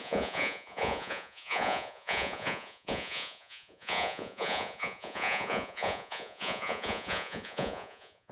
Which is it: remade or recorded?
remade